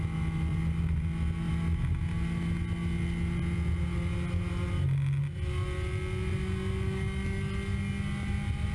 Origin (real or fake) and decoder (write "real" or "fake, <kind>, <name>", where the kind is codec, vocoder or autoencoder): real